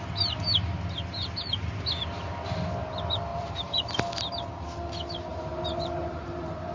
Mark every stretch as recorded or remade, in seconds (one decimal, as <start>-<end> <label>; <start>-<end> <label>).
0.0-3.3 recorded; 3.3-4.1 remade; 4.1-5.3 recorded; 5.3-6.7 remade